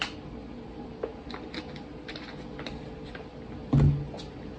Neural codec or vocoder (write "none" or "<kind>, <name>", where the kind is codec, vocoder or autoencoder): none